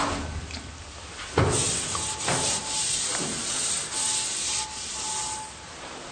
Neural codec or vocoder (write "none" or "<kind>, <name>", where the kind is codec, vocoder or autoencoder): none